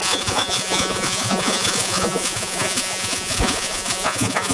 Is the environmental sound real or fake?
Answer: fake